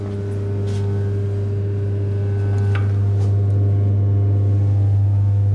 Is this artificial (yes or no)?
no